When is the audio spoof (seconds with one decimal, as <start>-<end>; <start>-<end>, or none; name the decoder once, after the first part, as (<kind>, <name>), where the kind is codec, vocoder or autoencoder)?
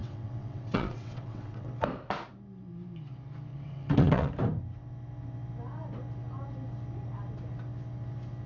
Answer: 0.0-1.7 (vocoder, WaveNeXt); 3.5-4.3